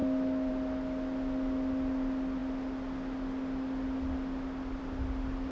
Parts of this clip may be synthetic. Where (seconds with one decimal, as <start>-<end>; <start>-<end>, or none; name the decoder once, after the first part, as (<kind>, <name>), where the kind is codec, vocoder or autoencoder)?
none